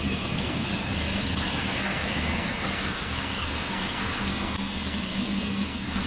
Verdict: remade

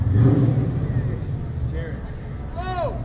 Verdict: recorded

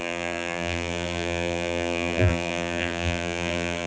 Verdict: remade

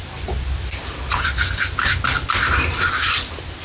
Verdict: recorded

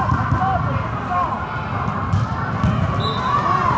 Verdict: recorded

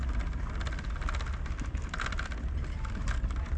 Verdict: recorded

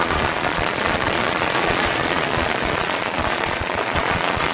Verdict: remade